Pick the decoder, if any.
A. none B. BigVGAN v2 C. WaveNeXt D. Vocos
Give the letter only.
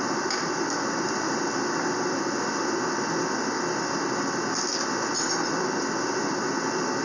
A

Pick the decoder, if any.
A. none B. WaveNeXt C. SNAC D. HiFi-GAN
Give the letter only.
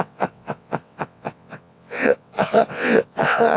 B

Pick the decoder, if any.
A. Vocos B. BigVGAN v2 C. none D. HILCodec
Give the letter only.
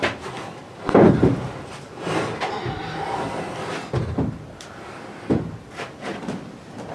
B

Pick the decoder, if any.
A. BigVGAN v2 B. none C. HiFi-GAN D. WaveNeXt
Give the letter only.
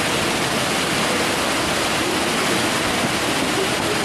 B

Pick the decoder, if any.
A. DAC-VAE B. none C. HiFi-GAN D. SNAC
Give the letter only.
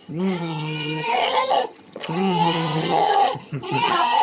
C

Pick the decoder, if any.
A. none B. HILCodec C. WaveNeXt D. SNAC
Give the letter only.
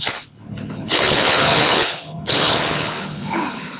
B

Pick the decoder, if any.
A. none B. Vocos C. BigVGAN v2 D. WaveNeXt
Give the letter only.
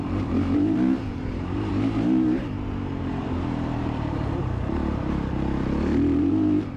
C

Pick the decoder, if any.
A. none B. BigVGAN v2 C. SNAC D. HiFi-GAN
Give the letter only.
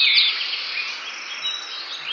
A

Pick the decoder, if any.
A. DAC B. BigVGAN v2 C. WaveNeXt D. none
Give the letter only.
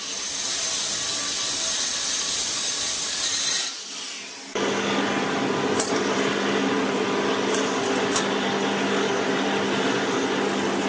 D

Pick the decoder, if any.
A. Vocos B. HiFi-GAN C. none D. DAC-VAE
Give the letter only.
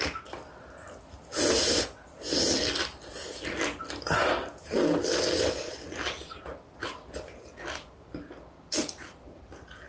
C